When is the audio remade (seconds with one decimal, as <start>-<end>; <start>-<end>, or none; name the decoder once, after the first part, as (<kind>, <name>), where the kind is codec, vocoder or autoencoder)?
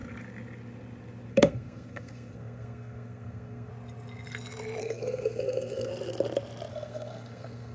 1.3-3.7 (codec, SNAC); 4.8-5.9; 6.7-7.7